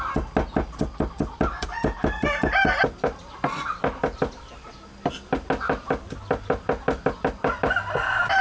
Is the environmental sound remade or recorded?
recorded